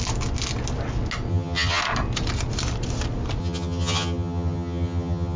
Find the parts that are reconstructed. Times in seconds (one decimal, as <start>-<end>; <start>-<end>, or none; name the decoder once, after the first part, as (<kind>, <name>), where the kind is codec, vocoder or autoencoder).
1.3-1.8 (vocoder, HiFi-GAN); 3.4-5.4